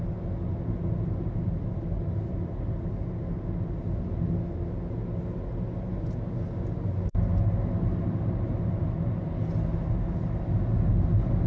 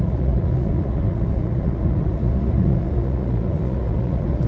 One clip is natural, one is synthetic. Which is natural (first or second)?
first